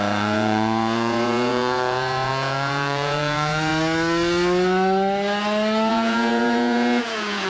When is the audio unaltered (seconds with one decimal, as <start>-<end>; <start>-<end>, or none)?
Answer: 3.7-5.9